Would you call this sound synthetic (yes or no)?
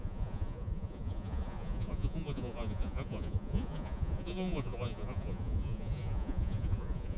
yes